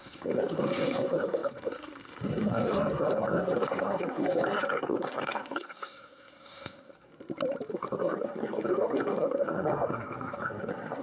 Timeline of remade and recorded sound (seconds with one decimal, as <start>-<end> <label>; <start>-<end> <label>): 0.0-7.1 remade; 7.1-7.7 recorded; 7.7-11.0 remade